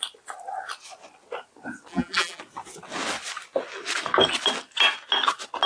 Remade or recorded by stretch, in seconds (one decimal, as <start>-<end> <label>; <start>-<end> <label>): 0.0-1.9 recorded; 1.9-2.4 remade; 2.4-5.7 recorded